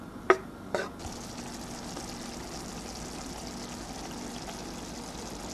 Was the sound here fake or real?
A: real